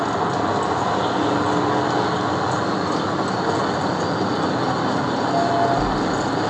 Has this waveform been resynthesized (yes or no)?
no